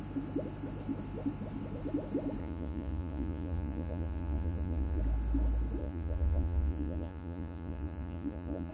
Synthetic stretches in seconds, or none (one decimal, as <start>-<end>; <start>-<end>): 2.4-5.0; 5.8-8.7